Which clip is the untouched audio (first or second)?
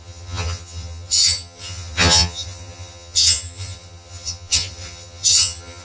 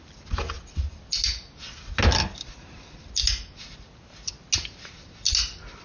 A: second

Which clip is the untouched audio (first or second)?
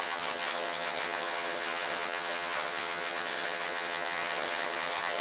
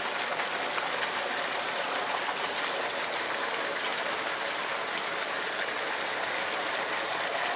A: second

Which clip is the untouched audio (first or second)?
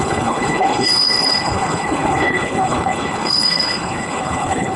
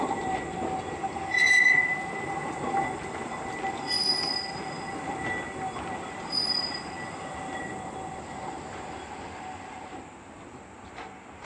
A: second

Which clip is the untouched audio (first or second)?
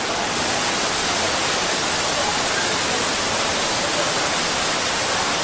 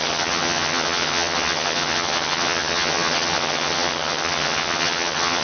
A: first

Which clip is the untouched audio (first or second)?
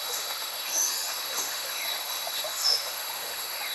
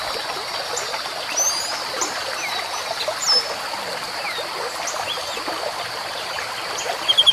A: second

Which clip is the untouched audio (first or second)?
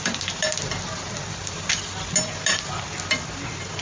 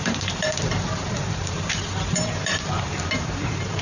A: first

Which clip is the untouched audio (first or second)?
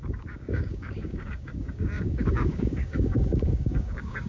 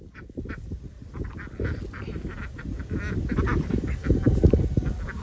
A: second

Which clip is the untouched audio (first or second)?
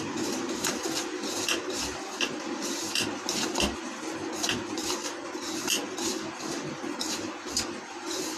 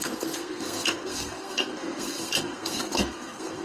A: first